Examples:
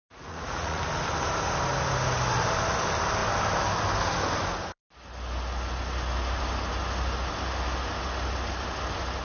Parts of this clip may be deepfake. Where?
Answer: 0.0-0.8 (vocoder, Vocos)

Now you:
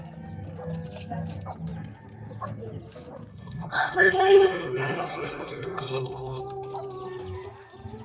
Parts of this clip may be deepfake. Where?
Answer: 3.3-6.4 (codec, SNAC)

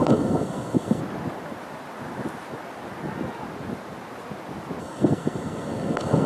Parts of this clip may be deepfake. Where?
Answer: 0.0-1.0 (codec, SNAC); 4.8-6.3

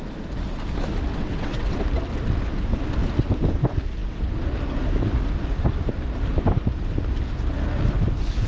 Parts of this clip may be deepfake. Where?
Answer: 1.1-1.8 (vocoder, WaveNeXt)

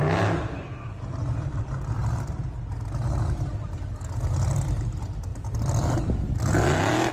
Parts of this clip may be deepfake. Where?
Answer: 0.0-7.1 (vocoder, BigVGAN v2)

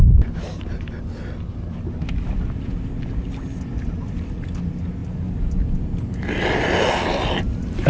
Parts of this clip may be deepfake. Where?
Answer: none

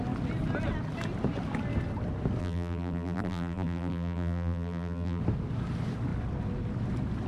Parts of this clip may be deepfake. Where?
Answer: 2.4-5.2 (vocoder, BigVGAN v2)